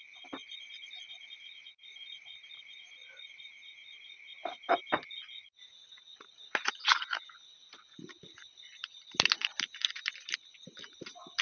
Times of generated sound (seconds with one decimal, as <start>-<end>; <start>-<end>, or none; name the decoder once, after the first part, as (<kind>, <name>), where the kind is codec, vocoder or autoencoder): none